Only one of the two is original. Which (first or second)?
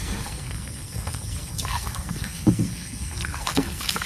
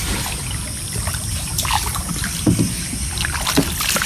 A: second